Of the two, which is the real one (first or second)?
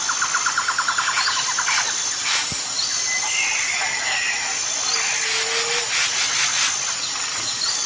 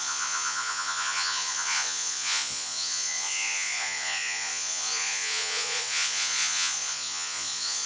first